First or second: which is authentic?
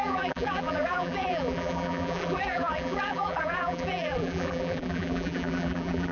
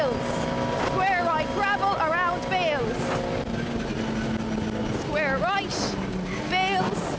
second